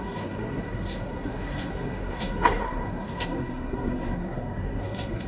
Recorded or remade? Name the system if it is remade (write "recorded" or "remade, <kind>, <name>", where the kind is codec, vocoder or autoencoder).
remade, codec, SNAC